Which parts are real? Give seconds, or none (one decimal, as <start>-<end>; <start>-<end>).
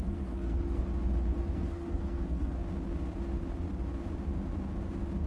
0.9-1.4; 2.6-5.3